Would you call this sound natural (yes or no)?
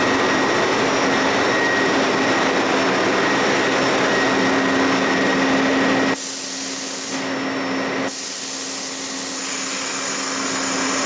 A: yes